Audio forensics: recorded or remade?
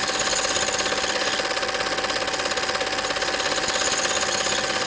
recorded